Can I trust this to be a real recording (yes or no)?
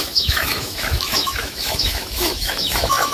no